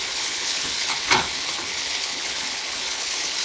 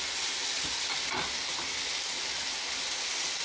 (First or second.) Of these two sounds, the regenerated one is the first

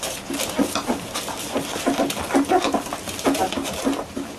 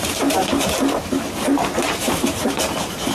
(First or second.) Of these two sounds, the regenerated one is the second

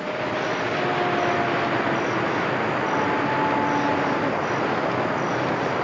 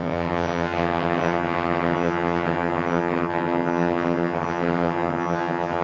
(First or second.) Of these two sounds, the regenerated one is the second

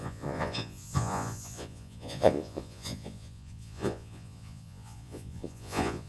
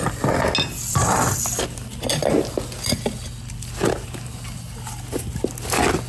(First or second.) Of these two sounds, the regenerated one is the first